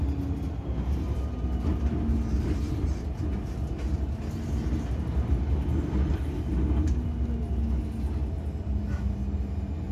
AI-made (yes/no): no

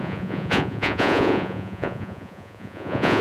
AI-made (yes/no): yes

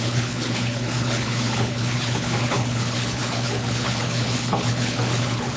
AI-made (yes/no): yes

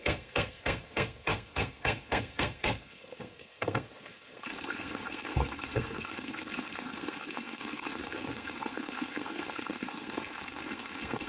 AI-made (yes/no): yes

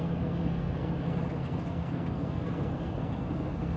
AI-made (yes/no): yes